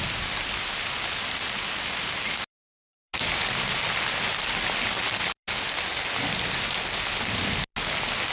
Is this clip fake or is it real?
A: real